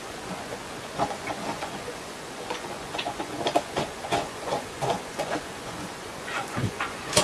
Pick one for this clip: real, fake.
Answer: fake